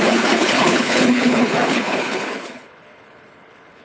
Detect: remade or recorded remade